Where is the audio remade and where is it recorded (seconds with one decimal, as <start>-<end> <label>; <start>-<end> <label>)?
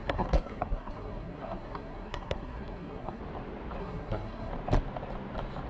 0.0-3.2 remade; 3.2-3.8 recorded; 3.8-4.5 remade; 4.5-5.7 recorded